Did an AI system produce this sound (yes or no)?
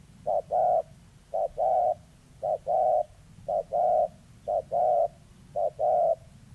no